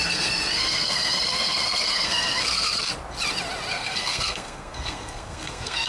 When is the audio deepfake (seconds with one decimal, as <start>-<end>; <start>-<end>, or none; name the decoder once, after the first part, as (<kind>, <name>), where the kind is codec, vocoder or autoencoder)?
0.0-2.9 (codec, SNAC); 3.7-5.9